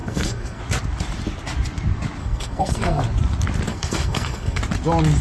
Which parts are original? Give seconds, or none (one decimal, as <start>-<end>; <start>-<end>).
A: 0.6-2.2; 3.0-3.7; 4.6-5.2